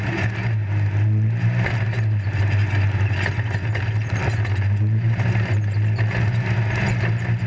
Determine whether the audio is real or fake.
real